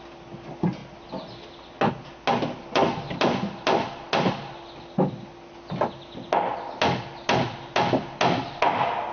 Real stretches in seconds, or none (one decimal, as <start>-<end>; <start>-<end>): 0.0-9.1